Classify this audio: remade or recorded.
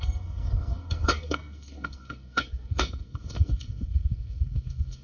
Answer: remade